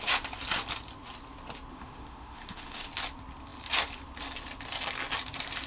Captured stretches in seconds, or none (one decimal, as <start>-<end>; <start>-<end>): 0.0-1.7; 2.9-5.7